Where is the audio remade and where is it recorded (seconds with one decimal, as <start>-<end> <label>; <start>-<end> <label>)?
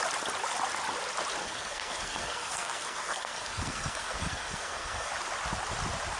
0.0-1.4 recorded; 1.4-5.1 remade; 5.1-6.2 recorded